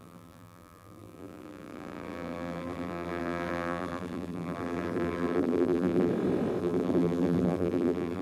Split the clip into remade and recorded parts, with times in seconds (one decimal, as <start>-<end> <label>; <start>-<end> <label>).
0.0-6.1 remade; 6.1-6.6 recorded; 6.6-8.2 remade